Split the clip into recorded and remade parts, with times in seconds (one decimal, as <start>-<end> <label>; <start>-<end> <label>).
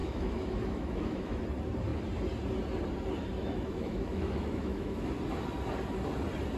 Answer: 0.0-1.4 remade; 1.4-3.4 recorded; 3.4-5.1 remade; 5.1-6.6 recorded